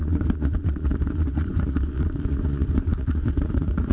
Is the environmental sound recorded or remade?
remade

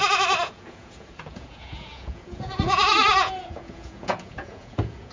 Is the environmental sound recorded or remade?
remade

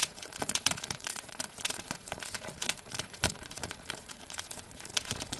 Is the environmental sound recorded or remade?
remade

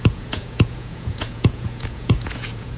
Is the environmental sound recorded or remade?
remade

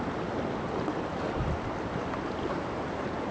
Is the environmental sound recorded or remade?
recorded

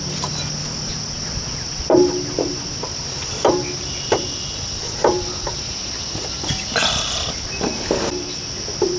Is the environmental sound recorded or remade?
recorded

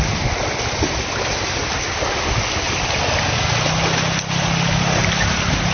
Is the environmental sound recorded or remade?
recorded